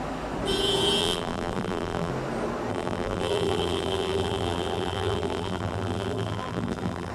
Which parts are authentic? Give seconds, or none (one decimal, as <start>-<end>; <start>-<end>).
0.0-1.0; 2.1-2.7